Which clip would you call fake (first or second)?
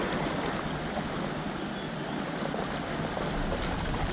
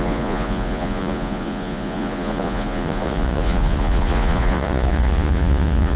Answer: second